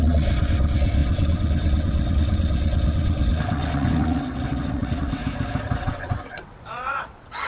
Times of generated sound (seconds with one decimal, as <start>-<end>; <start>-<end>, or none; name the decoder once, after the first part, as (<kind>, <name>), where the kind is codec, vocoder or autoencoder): 0.0-5.2 (vocoder, WaveNeXt); 5.8-7.5